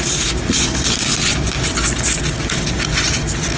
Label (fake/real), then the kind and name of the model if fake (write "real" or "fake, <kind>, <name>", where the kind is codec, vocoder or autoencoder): real